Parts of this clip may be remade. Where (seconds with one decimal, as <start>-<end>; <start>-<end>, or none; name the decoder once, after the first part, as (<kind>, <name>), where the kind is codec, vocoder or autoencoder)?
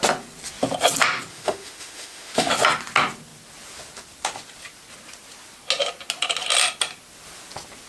1.3-2.5 (autoencoder, DAC-VAE)